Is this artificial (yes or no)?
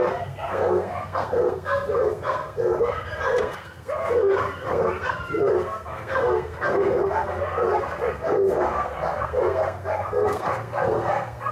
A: yes